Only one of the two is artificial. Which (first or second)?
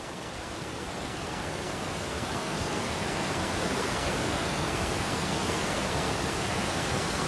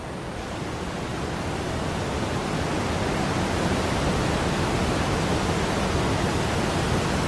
first